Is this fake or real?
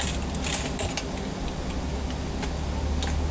real